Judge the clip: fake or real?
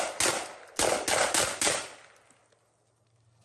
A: real